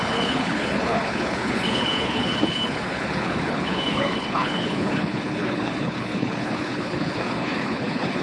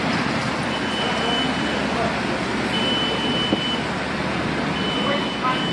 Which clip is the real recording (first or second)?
second